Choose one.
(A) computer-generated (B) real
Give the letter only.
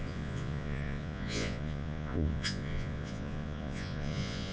A